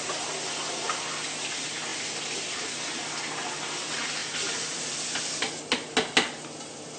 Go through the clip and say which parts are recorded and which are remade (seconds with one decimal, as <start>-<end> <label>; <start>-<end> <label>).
0.0-7.0 recorded